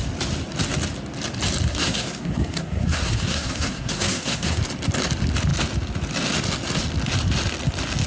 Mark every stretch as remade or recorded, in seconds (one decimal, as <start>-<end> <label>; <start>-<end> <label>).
0.0-1.7 recorded; 1.7-4.6 remade; 4.6-8.1 recorded